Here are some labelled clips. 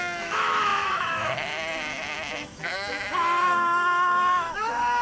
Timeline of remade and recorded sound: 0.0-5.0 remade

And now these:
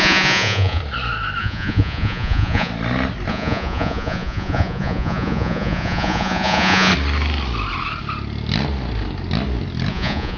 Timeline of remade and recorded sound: 0.0-0.8 remade; 0.8-1.4 recorded; 1.4-2.7 remade; 2.7-3.3 recorded; 3.3-6.9 remade; 6.9-9.9 recorded; 9.9-10.4 remade